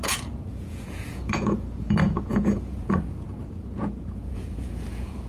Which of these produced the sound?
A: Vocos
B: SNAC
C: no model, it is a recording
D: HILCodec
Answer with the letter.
A